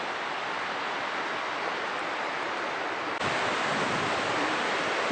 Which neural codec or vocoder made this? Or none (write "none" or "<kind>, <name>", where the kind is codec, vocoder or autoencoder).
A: none